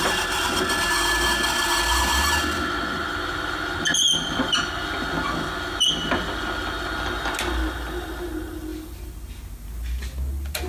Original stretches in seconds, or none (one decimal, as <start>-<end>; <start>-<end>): 0.0-10.7